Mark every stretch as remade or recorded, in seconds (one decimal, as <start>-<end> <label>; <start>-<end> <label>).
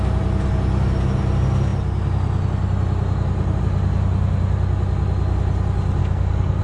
0.0-6.0 recorded; 6.0-6.6 remade